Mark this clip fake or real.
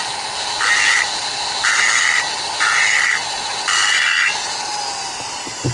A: real